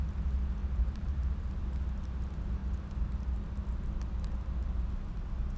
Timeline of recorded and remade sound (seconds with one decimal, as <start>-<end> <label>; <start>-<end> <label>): 0.0-0.6 recorded; 0.6-1.6 remade; 1.6-5.6 recorded